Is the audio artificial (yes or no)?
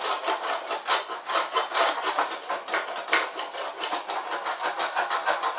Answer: no